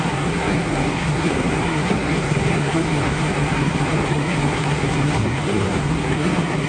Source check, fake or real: fake